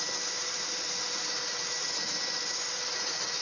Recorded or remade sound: recorded